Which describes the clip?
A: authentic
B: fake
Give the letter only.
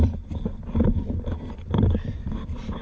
B